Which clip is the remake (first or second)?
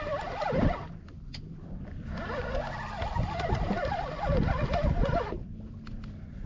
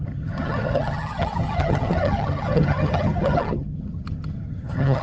second